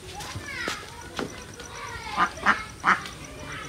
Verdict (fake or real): real